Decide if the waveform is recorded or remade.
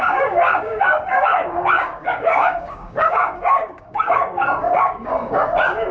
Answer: remade